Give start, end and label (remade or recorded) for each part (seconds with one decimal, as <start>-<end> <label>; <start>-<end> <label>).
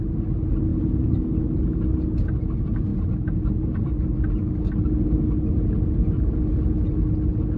0.0-7.6 recorded